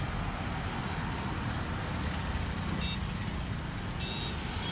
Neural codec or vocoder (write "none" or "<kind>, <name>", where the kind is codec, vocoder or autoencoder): none